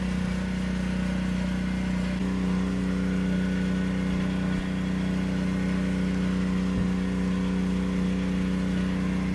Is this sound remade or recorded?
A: recorded